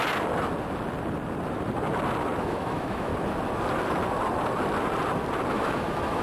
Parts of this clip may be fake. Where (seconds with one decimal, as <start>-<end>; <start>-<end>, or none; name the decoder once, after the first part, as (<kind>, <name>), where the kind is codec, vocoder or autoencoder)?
2.4-3.1 (autoencoder, DAC-VAE); 5.5-6.2